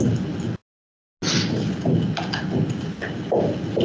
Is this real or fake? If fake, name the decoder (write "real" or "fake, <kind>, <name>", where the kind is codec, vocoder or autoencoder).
real